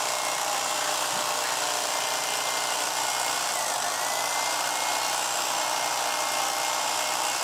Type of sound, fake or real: real